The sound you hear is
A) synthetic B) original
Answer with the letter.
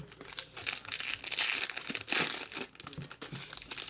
B